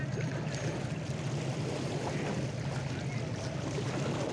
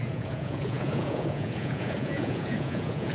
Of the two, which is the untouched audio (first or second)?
first